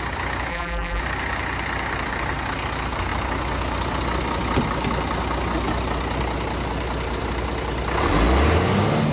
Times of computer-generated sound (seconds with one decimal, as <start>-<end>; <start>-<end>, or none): 0.5-1.0